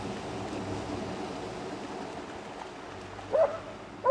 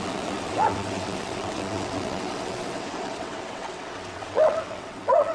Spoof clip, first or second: second